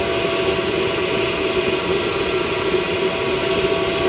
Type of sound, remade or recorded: recorded